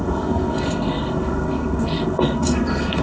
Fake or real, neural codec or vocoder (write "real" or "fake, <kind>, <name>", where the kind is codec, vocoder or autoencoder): fake, codec, SNAC